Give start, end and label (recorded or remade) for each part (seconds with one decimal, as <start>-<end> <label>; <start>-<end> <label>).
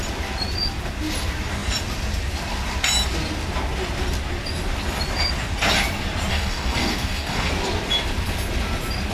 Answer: 0.0-6.3 recorded; 6.3-7.5 remade; 7.5-9.1 recorded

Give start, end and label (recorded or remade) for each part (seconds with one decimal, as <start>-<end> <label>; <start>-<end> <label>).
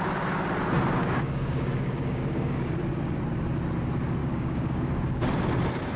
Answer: 0.0-1.0 recorded; 1.0-2.6 remade; 2.6-4.2 recorded; 4.2-5.3 remade; 5.3-6.0 recorded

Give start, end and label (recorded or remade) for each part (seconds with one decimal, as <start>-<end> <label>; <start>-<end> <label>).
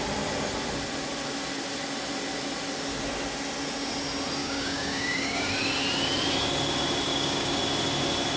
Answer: 0.0-4.4 recorded; 4.4-5.5 remade; 5.5-7.1 recorded; 7.1-7.6 remade; 7.6-8.4 recorded